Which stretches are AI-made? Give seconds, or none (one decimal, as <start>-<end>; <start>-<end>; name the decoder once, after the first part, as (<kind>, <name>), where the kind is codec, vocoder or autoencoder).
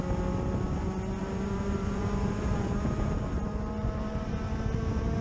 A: 1.2-4.3 (vocoder, BigVGAN v2)